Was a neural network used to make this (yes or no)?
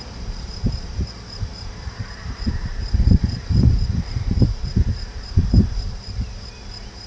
yes